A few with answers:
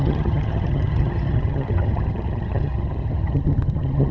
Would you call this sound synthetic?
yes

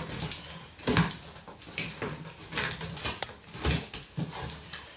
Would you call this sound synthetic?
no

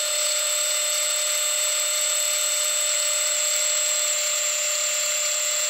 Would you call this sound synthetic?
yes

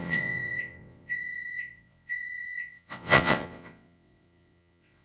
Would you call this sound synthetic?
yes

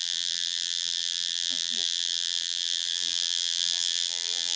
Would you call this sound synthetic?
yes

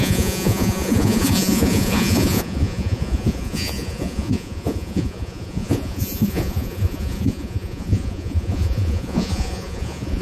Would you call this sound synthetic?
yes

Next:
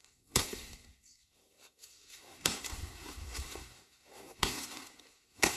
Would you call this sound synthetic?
yes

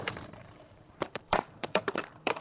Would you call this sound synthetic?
yes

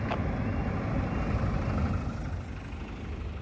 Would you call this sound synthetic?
no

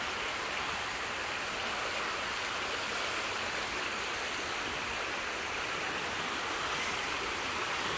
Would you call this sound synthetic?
no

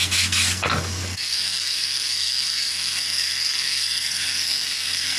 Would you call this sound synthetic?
yes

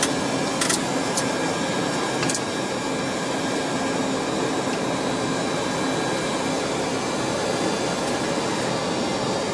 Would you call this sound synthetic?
no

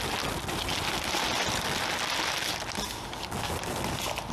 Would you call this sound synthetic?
no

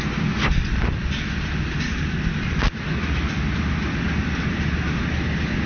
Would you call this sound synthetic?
no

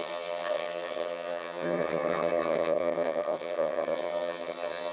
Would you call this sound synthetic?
yes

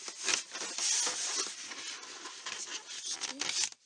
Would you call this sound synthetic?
no